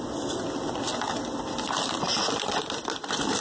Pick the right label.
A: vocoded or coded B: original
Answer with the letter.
B